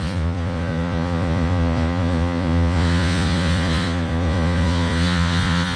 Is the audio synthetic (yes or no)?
yes